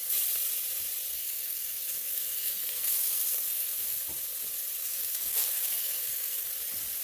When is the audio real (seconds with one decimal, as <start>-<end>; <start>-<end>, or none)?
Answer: 0.0-1.1; 4.0-4.8; 6.5-7.0

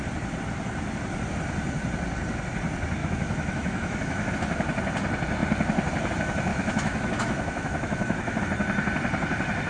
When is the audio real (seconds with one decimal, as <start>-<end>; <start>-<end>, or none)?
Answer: 0.0-3.0; 4.3-6.5; 8.4-9.7

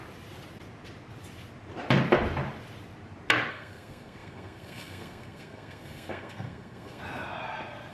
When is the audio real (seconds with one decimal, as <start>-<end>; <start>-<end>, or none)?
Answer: 0.0-3.5; 7.0-7.9

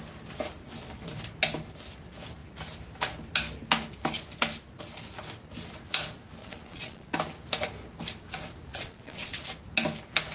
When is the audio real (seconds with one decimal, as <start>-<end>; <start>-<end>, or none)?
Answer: 0.0-6.4; 7.1-8.7; 9.4-10.3

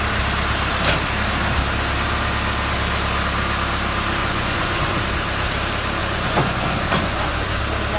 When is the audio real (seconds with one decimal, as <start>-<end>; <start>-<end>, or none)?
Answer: 0.0-4.2; 5.0-6.0; 7.6-8.0

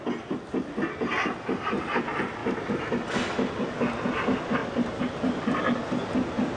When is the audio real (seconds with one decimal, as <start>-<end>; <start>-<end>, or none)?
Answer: 0.0-4.6; 5.6-6.6